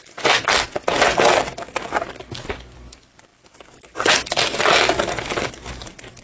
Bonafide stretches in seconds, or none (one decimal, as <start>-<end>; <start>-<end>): 0.0-6.2